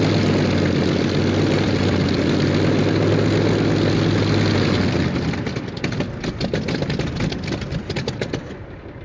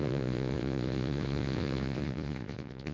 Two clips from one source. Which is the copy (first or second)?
second